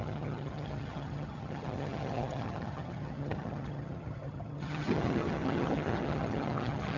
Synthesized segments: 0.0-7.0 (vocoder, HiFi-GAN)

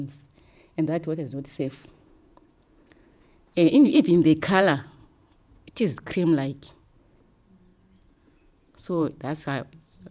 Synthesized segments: 1.6-5.8 (vocoder, Vocos); 7.7-9.2

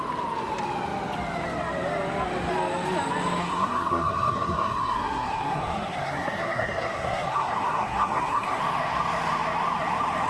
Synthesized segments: 3.4-8.6 (codec, SNAC)

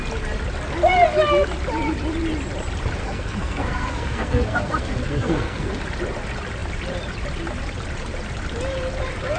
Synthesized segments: 3.0-5.7 (codec, SNAC)

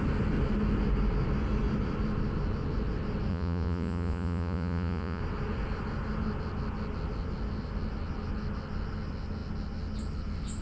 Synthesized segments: 3.3-5.2 (vocoder, Vocos)

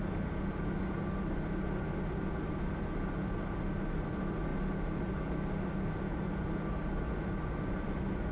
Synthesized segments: none

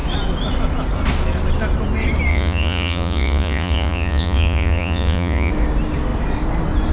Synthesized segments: 2.3-5.5 (vocoder, Vocos)